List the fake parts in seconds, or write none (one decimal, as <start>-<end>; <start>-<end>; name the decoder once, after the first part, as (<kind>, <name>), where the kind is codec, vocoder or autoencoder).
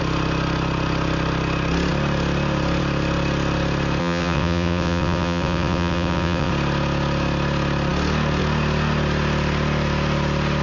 4.0-6.5 (vocoder, WaveNeXt)